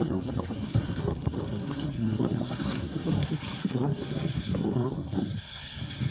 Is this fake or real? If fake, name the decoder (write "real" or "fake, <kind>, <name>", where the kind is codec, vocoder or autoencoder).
fake, codec, SNAC